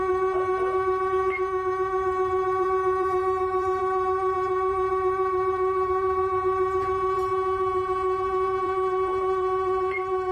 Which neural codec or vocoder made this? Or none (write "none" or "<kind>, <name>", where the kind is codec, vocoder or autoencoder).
vocoder, BigVGAN v2